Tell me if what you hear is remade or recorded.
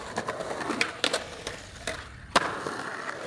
recorded